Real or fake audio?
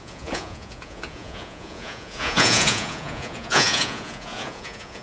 fake